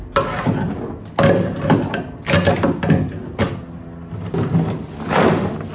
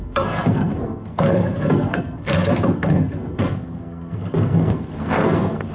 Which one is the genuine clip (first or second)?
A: first